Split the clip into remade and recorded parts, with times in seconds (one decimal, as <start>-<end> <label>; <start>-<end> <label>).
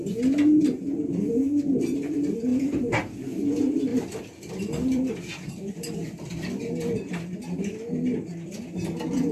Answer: 0.0-2.5 recorded; 2.5-3.3 remade; 3.3-3.9 recorded; 3.9-7.4 remade; 7.4-9.3 recorded